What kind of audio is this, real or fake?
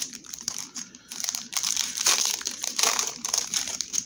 fake